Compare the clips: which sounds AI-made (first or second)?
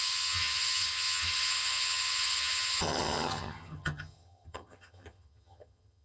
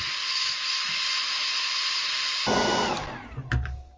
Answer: first